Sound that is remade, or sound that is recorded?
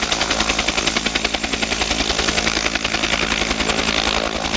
recorded